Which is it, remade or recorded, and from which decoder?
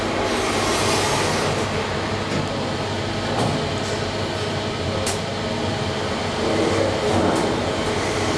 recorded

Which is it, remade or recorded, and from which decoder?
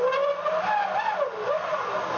recorded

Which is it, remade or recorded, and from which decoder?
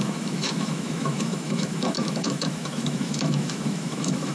remade, autoencoder, DAC-VAE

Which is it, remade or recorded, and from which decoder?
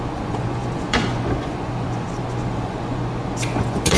remade, vocoder, Vocos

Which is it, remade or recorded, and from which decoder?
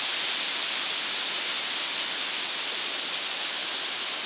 recorded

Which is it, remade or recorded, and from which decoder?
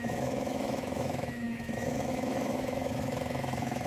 remade, autoencoder, DAC-VAE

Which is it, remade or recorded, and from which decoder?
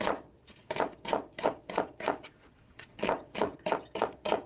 remade, vocoder, Vocos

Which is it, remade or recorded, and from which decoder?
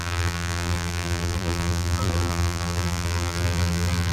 remade, vocoder, BigVGAN v2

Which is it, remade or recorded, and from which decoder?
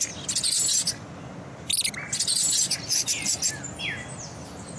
recorded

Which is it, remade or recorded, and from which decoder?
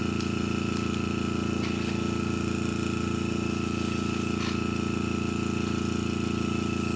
recorded